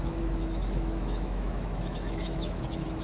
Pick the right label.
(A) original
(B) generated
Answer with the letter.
B